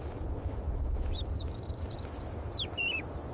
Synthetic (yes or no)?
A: no